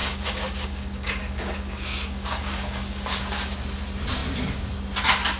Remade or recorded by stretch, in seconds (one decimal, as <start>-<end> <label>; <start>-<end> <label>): 0.0-3.2 remade; 3.2-5.4 recorded